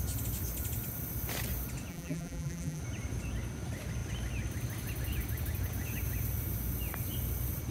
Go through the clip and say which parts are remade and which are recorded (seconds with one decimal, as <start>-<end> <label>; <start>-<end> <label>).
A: 0.0-1.9 recorded; 1.9-2.8 remade; 2.8-7.7 recorded